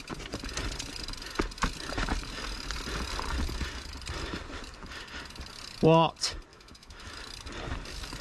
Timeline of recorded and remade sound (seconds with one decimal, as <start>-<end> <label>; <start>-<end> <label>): 0.0-6.5 recorded; 6.5-7.1 remade; 7.1-8.2 recorded